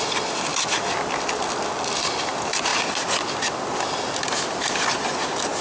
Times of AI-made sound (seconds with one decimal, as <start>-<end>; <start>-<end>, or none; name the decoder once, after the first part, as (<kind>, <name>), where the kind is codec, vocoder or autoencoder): none